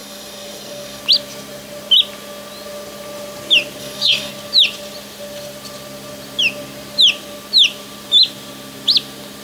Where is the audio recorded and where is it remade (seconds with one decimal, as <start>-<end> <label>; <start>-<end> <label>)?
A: 0.0-1.0 remade; 1.0-3.8 recorded; 3.8-4.3 remade; 4.3-9.4 recorded